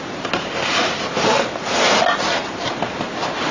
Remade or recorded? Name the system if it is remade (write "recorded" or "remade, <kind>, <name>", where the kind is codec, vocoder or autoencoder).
remade, vocoder, BigVGAN v2